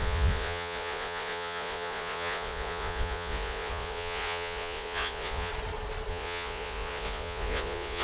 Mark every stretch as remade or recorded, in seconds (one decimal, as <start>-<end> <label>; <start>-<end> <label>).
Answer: 0.0-5.5 remade; 5.5-6.1 recorded; 6.1-8.0 remade